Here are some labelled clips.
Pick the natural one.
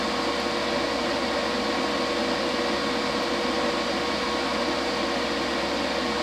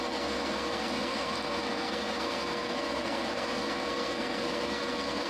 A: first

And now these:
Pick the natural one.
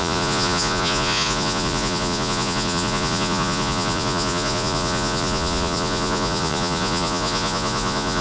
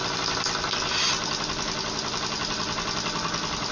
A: second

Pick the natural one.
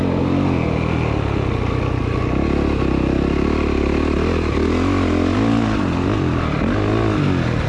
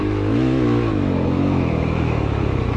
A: first